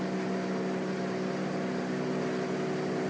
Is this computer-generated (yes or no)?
no